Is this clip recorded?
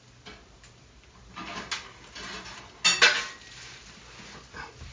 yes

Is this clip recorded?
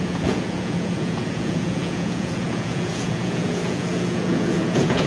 no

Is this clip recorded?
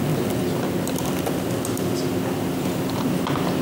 yes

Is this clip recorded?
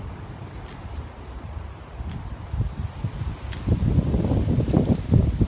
yes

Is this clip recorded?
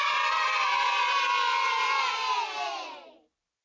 yes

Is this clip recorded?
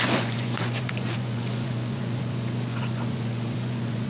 no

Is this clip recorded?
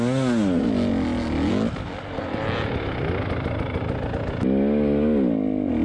yes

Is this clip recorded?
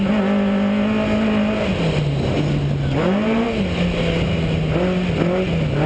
yes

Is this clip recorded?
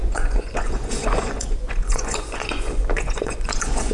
no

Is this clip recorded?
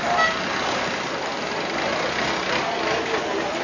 yes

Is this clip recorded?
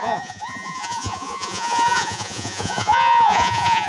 no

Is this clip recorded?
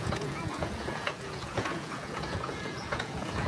no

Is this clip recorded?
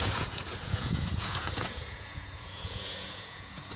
no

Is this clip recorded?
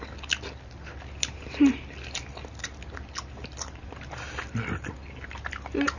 yes